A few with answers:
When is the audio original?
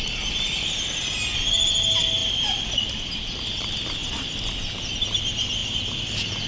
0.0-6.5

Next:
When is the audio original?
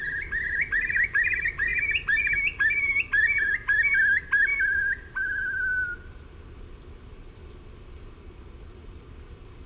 0.0-9.7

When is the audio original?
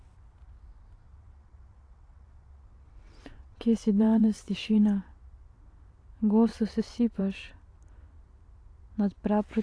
0.0-1.0; 5.2-6.5; 7.2-9.6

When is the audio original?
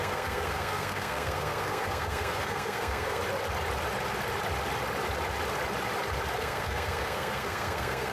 3.2-6.4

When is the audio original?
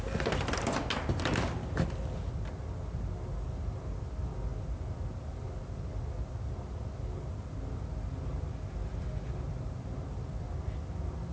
0.0-11.3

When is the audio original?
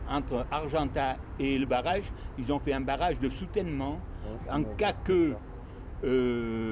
0.0-1.2; 2.3-6.7